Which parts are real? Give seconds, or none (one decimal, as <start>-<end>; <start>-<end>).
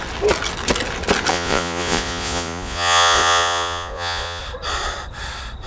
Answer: 0.0-1.3; 4.4-5.7